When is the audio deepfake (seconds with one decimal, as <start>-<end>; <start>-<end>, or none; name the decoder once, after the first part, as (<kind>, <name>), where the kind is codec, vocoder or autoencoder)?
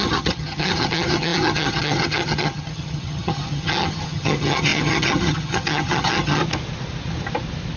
0.0-6.4 (vocoder, HiFi-GAN)